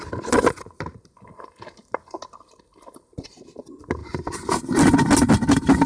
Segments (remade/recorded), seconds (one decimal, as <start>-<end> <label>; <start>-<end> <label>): 0.0-5.9 recorded